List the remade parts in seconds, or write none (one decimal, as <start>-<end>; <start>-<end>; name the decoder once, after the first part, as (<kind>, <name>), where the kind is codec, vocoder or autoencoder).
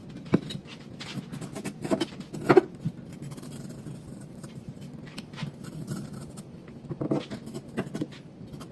3.1-6.6 (vocoder, BigVGAN v2)